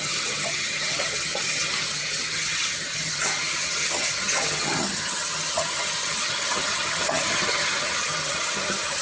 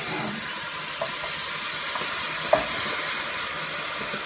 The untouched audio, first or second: second